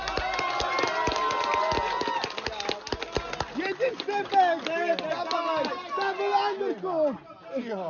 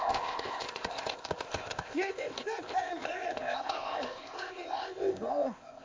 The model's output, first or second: second